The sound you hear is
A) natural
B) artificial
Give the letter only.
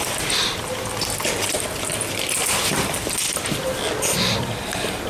B